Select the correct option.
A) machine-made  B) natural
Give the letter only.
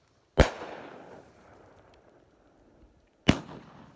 B